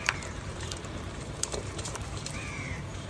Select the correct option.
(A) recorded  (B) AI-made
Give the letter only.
B